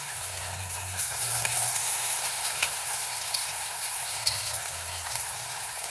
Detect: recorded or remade remade